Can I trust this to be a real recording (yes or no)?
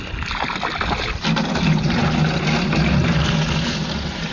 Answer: yes